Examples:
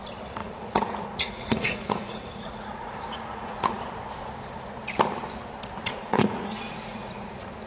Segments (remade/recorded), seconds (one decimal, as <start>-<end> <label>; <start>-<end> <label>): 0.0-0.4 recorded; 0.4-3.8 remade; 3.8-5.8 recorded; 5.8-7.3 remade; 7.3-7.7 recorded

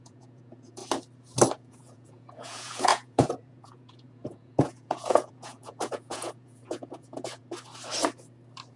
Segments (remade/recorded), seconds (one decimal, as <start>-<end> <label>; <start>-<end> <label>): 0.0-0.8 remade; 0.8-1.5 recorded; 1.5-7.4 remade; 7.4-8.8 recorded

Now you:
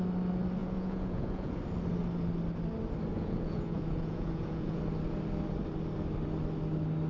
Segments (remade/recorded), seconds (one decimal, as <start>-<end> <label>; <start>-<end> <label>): 0.0-0.6 recorded; 0.6-1.6 remade; 1.6-3.1 recorded; 3.1-4.8 remade; 4.8-7.1 recorded

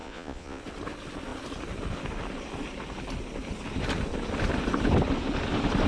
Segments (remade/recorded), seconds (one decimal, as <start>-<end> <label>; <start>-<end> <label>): 0.0-0.6 remade; 0.6-5.9 recorded